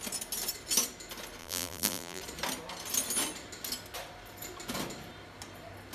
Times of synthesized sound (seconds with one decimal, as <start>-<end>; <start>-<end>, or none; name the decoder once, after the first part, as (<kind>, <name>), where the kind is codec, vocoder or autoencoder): 1.4-2.2 (vocoder, BigVGAN v2)